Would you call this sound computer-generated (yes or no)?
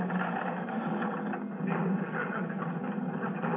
no